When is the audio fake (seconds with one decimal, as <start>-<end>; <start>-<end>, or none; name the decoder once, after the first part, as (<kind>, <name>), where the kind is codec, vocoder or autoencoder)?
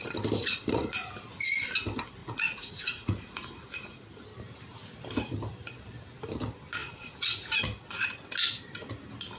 0.4-1.1 (vocoder, Vocos); 2.2-4.0; 6.8-7.6